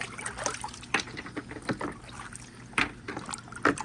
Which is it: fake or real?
real